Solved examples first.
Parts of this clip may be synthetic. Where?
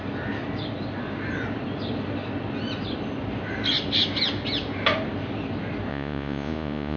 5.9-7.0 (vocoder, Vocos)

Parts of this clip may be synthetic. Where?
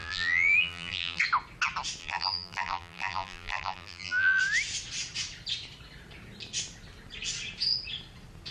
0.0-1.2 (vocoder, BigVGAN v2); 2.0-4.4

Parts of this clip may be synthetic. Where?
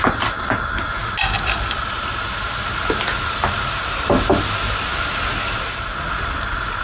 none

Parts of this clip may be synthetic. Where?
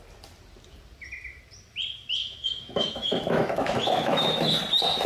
2.2-4.6 (autoencoder, DAC-VAE)